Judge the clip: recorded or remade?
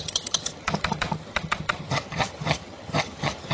remade